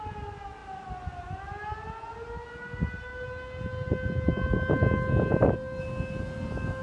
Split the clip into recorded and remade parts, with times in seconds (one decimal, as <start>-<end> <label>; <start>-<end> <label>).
0.0-6.8 recorded